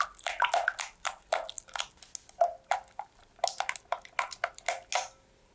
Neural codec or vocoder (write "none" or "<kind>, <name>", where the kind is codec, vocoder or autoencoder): none